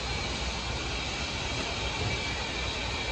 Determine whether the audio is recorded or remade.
recorded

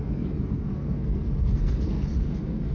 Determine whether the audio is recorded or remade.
remade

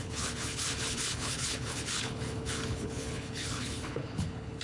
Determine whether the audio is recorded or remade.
remade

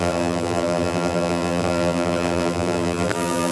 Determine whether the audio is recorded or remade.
remade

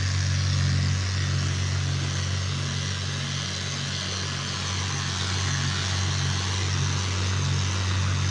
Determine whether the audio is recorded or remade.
recorded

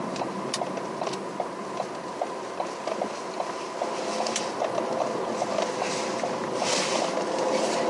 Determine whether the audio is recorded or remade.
recorded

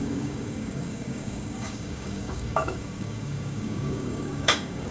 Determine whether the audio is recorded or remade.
remade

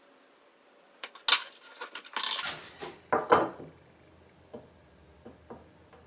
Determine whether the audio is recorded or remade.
recorded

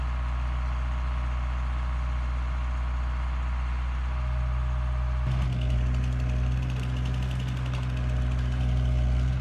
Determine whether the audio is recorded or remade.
recorded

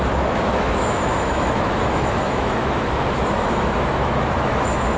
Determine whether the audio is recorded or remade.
remade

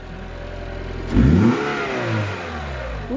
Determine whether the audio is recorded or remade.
recorded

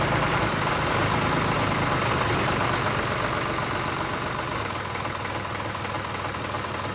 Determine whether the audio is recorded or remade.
recorded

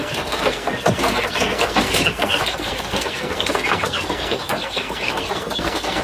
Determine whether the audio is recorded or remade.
remade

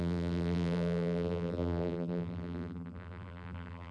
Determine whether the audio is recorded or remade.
remade